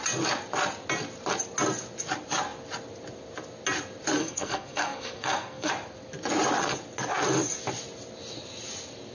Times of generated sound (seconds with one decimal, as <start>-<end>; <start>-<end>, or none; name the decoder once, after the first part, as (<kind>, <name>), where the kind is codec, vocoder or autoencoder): 4.2-5.7 (codec, SNAC)